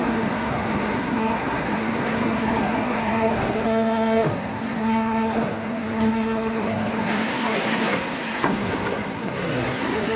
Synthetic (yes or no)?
yes